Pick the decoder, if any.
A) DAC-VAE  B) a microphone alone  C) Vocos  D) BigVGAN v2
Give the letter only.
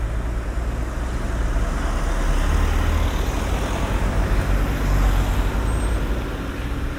B